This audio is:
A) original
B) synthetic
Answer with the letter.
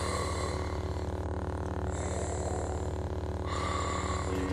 A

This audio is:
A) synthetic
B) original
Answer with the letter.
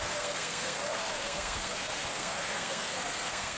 A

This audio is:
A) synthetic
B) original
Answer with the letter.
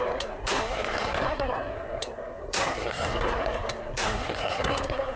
A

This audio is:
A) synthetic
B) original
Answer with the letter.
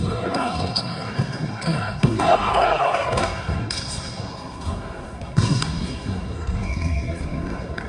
A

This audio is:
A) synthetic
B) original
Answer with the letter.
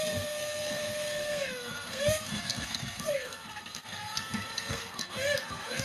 A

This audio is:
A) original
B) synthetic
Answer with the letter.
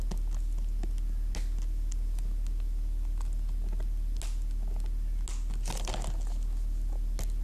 A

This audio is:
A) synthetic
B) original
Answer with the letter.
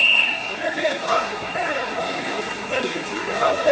A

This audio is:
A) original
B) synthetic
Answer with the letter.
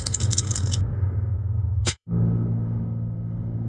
B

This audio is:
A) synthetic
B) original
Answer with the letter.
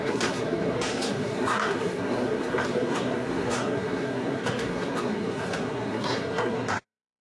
A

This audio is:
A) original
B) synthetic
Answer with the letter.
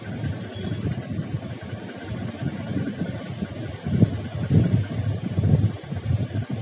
A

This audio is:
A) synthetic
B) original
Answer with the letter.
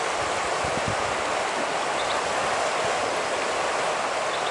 B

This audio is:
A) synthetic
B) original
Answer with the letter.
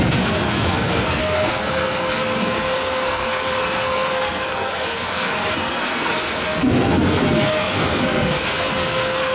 A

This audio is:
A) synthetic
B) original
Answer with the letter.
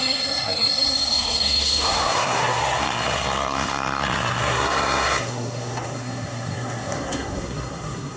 A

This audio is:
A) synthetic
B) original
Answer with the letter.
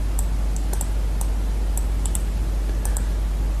B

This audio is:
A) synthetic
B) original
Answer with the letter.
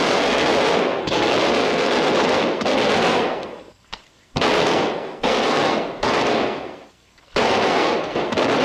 A